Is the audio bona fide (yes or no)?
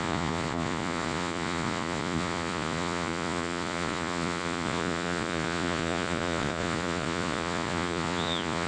no